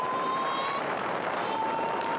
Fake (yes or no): yes